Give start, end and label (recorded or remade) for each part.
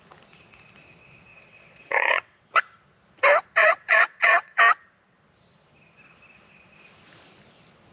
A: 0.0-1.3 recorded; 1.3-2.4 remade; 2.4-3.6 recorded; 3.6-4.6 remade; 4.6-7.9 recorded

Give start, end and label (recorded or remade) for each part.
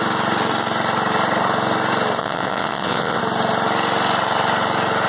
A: 0.0-2.2 recorded; 2.2-3.2 remade; 3.2-5.1 recorded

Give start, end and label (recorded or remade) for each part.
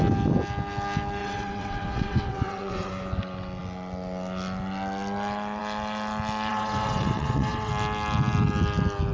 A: 0.0-1.2 recorded; 1.2-2.9 remade; 2.9-6.5 recorded; 6.5-7.7 remade; 7.7-9.1 recorded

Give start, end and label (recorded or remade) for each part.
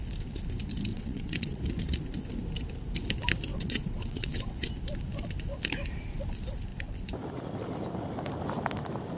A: 0.0-0.9 recorded; 0.9-1.6 remade; 1.6-3.5 recorded; 3.5-4.7 remade; 4.7-9.2 recorded